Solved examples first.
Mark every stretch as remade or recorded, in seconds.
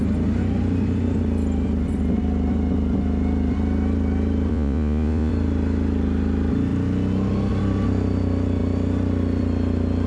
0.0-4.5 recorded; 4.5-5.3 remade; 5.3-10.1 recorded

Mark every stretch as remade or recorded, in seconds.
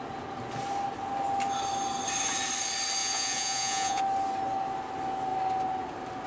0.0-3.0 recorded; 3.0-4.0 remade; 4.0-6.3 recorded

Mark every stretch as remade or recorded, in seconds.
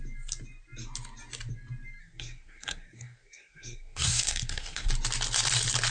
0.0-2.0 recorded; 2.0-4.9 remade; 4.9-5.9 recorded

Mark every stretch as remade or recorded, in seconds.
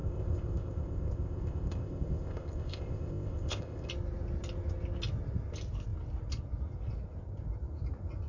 0.0-3.9 remade; 3.9-8.3 recorded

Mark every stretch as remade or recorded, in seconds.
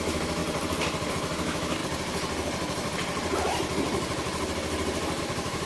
0.0-0.4 remade; 0.4-1.1 recorded; 1.1-1.8 remade; 1.8-5.2 recorded; 5.2-5.7 remade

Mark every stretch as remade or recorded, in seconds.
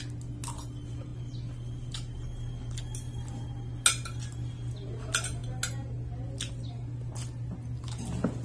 0.0-8.4 recorded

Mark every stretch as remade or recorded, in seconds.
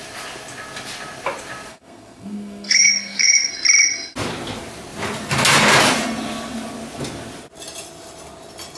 0.0-1.7 recorded; 1.7-3.5 remade; 3.5-8.8 recorded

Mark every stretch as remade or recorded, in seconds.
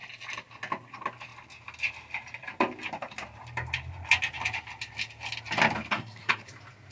0.0-5.9 recorded; 5.9-6.5 remade; 6.5-6.9 recorded